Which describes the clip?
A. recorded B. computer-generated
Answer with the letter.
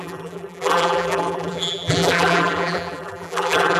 B